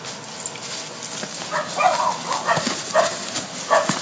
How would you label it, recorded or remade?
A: recorded